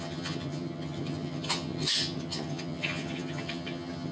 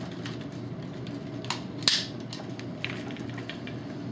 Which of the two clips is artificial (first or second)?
first